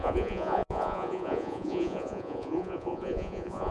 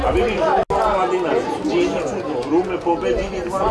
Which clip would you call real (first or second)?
second